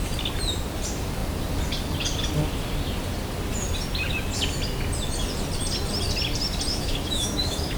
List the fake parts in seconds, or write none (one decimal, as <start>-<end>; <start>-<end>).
6.7-7.8